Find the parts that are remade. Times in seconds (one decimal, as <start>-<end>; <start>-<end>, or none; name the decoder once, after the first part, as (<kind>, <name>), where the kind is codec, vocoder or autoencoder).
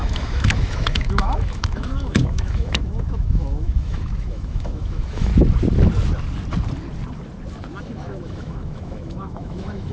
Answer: 0.0-5.3 (autoencoder, DAC-VAE); 7.8-9.9